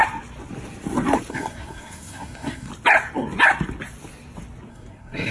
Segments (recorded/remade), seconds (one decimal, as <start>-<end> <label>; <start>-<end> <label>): 0.0-1.3 recorded; 1.3-2.7 remade; 2.7-4.7 recorded; 4.7-5.3 remade